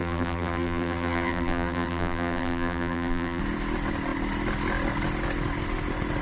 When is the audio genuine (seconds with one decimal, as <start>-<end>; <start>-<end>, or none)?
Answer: 3.4-6.2